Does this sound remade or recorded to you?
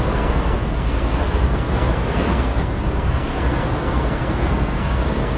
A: remade